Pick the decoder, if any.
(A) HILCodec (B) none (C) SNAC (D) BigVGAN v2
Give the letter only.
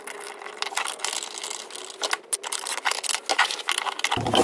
B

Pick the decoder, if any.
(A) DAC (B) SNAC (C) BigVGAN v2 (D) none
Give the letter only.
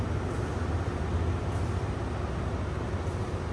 D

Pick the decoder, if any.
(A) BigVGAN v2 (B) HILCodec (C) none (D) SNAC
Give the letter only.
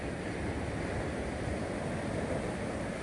C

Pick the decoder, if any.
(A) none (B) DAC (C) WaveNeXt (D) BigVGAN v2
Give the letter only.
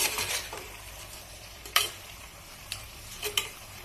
D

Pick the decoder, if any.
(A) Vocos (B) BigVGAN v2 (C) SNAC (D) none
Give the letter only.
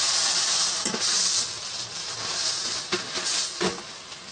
B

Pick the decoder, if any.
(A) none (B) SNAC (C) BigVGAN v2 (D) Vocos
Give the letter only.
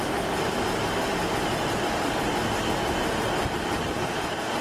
A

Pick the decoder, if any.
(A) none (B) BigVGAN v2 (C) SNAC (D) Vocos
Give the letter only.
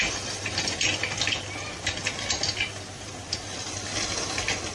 A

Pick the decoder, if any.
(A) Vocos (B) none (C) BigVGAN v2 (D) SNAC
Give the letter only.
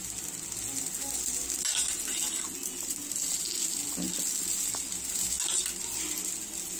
B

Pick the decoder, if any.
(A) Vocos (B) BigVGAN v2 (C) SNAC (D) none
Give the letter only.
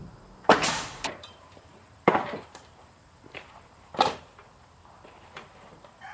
B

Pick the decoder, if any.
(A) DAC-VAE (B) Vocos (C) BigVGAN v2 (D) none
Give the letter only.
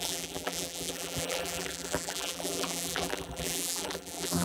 C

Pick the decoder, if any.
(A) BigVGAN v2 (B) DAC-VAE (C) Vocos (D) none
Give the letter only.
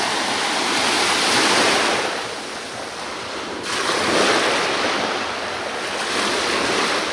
D